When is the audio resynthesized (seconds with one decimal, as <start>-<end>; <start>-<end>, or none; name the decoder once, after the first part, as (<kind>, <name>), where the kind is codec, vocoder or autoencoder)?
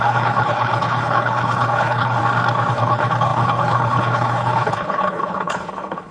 0.0-2.2 (codec, HILCodec); 2.7-6.1